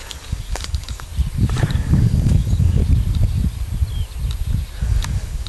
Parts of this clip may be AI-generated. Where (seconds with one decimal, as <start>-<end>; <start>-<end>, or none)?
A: 0.0-1.1; 1.7-2.8; 4.8-5.5